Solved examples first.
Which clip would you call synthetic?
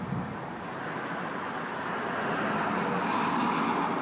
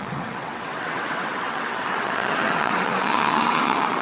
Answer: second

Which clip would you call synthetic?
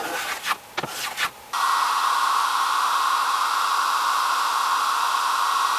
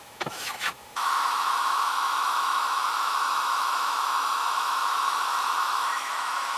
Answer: second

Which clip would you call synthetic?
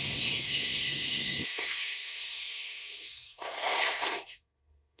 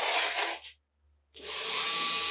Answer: first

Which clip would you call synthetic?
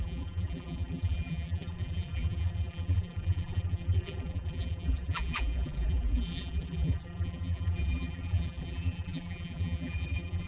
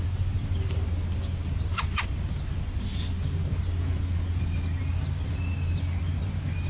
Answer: first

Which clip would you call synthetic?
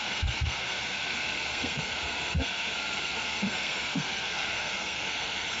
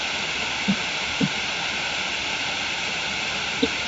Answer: first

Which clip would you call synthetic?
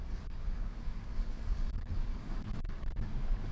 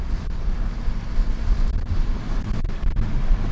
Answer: first